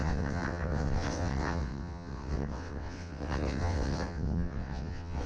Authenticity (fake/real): fake